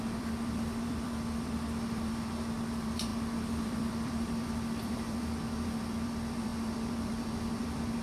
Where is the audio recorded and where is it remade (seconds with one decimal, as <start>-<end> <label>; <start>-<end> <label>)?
0.0-8.0 remade